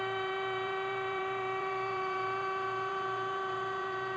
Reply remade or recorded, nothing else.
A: remade